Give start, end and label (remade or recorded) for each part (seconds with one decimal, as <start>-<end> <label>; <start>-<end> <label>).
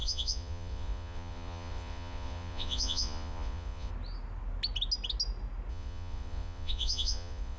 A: 0.0-3.9 remade; 3.9-5.7 recorded; 5.7-7.6 remade